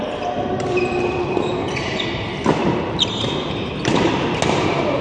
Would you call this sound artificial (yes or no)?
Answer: no